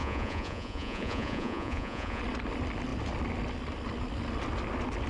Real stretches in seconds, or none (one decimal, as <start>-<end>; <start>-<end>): 2.2-5.1